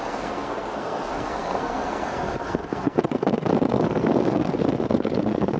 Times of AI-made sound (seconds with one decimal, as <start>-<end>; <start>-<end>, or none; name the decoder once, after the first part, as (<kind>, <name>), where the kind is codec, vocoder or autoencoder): 0.0-5.6 (codec, SNAC)